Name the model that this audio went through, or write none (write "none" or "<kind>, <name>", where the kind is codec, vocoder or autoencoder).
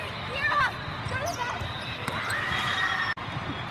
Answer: none